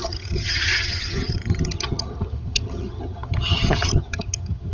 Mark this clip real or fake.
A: fake